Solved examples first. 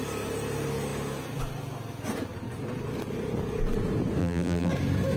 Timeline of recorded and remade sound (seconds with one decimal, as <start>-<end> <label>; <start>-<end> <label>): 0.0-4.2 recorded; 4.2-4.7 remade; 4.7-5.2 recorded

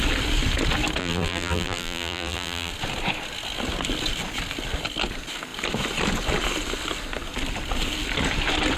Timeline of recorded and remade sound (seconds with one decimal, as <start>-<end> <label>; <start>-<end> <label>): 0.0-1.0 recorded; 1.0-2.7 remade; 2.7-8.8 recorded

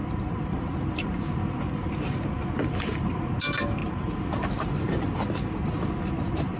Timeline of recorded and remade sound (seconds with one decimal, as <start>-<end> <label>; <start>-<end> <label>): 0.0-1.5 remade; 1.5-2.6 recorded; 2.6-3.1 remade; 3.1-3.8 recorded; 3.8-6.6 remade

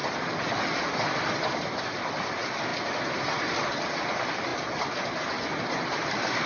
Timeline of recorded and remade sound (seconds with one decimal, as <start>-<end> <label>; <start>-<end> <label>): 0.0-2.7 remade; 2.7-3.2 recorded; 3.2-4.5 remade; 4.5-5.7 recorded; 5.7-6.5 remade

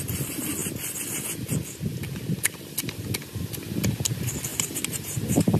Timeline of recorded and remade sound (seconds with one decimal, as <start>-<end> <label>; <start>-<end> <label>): 0.0-4.5 recorded; 4.5-5.6 remade

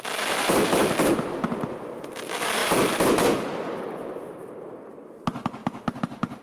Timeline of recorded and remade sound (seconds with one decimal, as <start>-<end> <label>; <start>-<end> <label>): 0.0-6.4 recorded

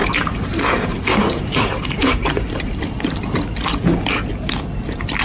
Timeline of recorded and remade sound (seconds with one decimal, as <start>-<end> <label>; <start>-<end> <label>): 0.0-3.1 remade; 3.1-5.2 recorded

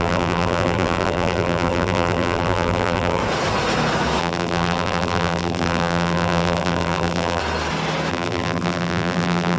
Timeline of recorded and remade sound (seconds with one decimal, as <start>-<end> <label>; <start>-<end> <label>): 0.0-3.2 remade; 3.2-4.2 recorded; 4.2-7.4 remade; 7.4-8.1 recorded; 8.1-9.6 remade